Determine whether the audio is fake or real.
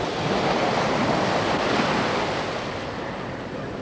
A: real